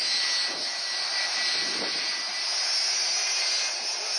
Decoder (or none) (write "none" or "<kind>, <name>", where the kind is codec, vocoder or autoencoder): none